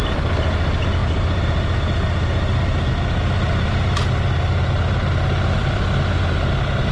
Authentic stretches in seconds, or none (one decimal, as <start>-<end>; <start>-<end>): 0.0-6.9